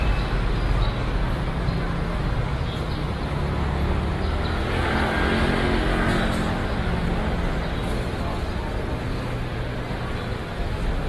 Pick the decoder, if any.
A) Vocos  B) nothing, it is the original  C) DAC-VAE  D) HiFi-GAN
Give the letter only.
B